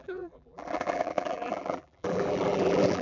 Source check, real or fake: fake